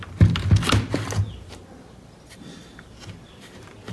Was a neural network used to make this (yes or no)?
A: no